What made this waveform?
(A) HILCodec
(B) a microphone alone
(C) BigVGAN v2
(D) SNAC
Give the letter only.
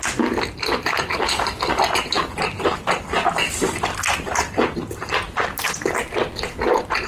B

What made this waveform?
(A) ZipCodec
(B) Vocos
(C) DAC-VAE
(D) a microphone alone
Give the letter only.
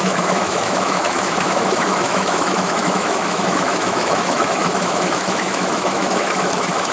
C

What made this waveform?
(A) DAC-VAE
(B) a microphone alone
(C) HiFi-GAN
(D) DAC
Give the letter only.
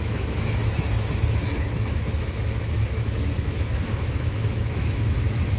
A